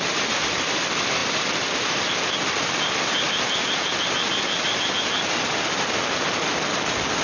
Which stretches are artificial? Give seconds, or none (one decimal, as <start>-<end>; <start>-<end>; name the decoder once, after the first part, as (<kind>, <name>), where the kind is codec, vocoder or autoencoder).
none